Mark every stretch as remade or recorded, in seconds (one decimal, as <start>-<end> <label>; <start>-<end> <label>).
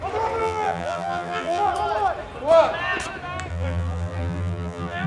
0.0-0.4 recorded; 0.4-1.7 remade; 1.7-3.5 recorded; 3.5-5.1 remade